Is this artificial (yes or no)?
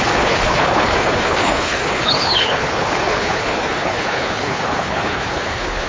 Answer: yes